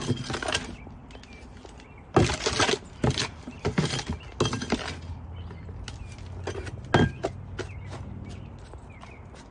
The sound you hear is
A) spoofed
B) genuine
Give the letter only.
B